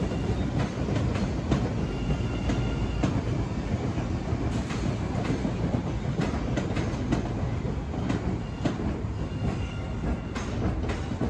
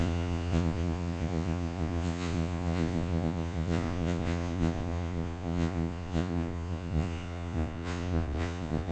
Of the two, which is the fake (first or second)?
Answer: second